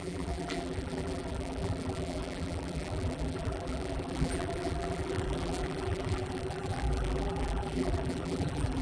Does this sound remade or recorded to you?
remade